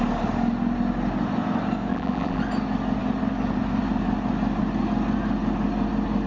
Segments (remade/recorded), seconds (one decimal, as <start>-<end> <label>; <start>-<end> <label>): 0.0-1.9 recorded; 1.9-2.4 remade; 2.4-6.3 recorded